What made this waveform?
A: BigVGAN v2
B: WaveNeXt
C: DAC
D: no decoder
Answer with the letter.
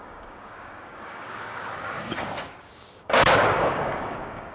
C